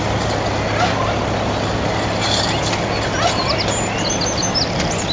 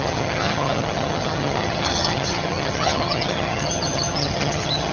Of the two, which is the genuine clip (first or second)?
first